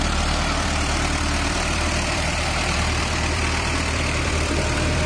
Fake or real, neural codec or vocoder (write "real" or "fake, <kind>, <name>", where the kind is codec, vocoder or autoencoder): fake, vocoder, BigVGAN v2